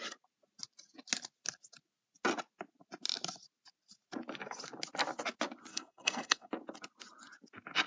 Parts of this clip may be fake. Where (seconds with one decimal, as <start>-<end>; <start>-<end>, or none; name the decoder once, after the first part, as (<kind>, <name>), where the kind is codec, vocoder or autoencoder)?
5.7-6.5 (codec, SNAC)